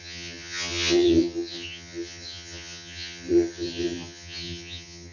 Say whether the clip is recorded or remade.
remade